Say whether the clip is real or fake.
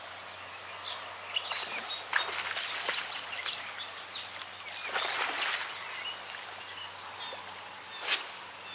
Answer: real